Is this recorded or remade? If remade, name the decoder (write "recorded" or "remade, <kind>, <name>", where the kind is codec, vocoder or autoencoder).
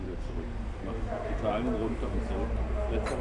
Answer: recorded